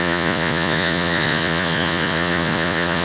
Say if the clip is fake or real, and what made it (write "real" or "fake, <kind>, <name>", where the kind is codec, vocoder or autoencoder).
fake, vocoder, Vocos